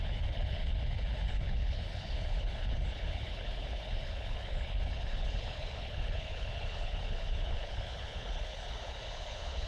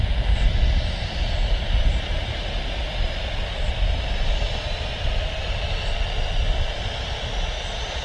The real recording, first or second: second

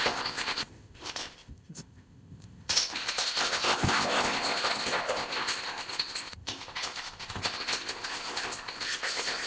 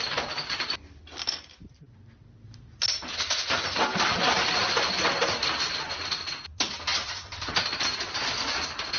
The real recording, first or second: second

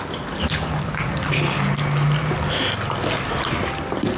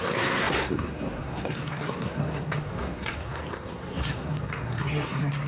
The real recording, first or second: first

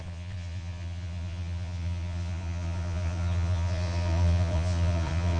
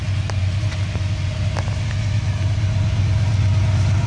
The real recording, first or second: second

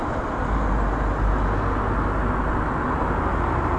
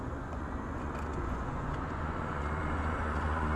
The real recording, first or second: first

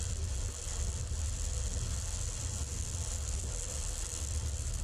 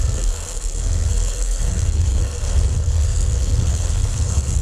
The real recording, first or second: first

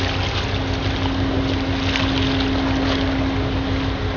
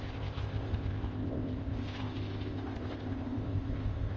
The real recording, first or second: first